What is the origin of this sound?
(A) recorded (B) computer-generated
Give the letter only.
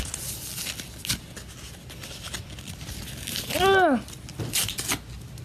A